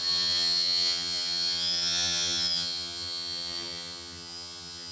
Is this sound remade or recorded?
remade